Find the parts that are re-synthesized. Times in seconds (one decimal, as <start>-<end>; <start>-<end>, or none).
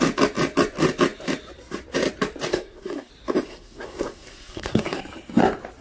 2.5-3.1; 3.5-5.0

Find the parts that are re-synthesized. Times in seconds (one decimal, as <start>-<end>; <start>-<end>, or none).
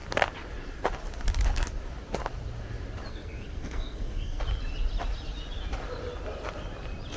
3.1-4.4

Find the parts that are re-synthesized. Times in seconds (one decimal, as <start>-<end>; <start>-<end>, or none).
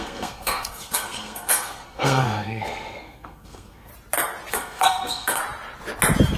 0.0-3.9; 4.5-5.4